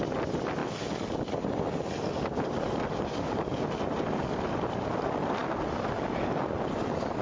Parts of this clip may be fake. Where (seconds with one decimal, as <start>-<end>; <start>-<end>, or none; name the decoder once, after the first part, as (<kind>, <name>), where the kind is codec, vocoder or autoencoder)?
none